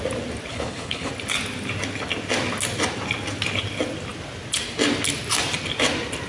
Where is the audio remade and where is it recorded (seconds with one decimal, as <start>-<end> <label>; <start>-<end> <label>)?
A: 0.0-0.5 recorded; 0.5-1.1 remade; 1.1-6.3 recorded